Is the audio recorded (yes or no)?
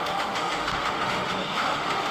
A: no